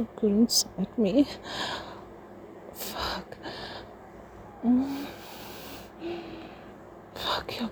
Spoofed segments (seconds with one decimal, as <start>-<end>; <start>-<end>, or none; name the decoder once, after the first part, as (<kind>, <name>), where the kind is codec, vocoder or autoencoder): none